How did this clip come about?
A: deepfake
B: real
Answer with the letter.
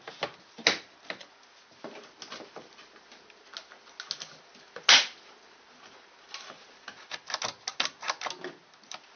B